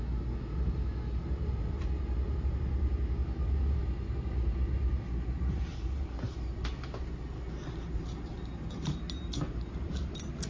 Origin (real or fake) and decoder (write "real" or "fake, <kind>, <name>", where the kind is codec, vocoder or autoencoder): real